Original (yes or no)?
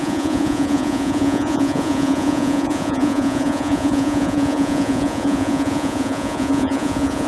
no